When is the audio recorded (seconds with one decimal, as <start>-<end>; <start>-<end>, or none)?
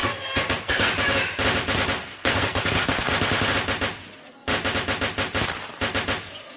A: 0.9-2.0; 3.1-6.6